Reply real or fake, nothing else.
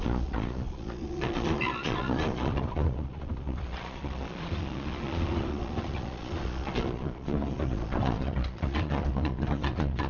fake